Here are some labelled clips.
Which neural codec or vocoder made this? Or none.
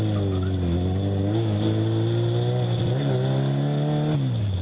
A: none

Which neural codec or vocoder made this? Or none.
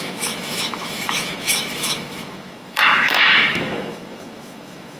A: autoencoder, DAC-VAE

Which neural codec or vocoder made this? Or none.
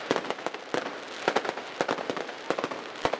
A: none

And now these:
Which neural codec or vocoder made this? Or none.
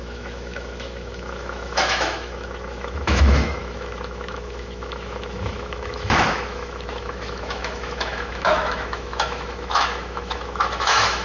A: autoencoder, DAC-VAE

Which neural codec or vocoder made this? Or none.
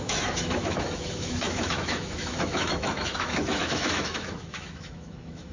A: autoencoder, DAC-VAE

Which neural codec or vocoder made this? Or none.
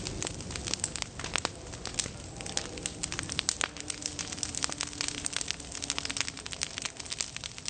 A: none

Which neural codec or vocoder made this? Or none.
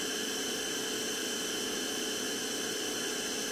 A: none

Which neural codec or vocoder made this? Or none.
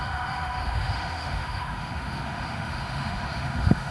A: autoencoder, DAC-VAE